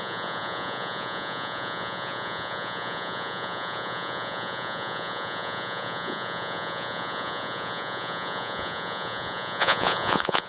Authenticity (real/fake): fake